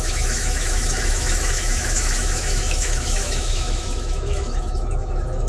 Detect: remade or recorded remade